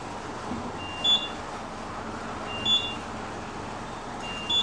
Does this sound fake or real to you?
real